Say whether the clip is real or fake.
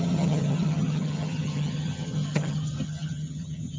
fake